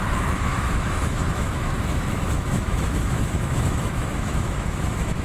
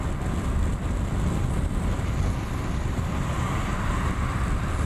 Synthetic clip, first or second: first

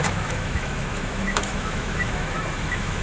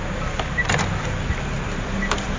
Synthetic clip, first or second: first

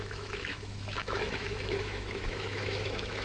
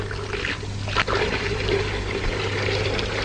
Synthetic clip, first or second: first